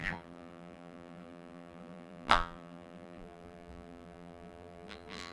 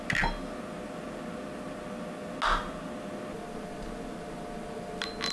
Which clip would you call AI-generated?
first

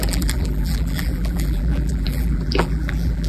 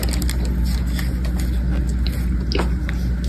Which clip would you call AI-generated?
first